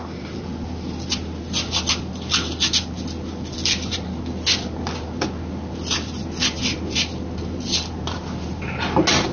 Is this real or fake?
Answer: real